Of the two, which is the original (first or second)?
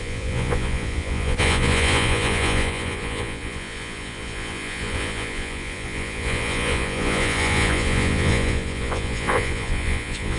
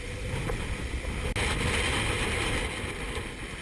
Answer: second